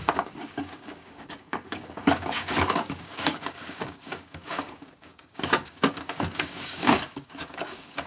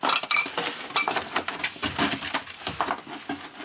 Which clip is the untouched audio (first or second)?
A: second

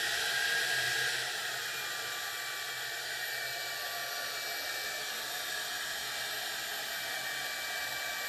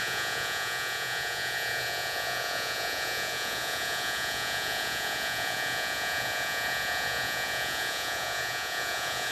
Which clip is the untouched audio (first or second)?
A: first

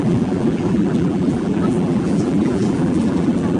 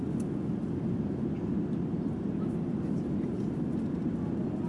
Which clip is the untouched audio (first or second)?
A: second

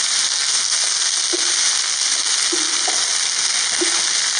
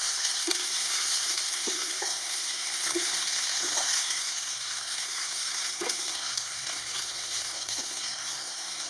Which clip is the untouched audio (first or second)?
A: first